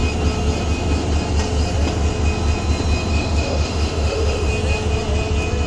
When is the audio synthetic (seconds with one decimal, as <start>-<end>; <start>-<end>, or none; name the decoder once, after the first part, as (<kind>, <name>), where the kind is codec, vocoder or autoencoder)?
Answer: 3.1-4.5 (autoencoder, DAC-VAE)